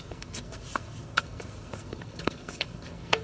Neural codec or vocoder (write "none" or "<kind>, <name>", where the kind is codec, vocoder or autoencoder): codec, SNAC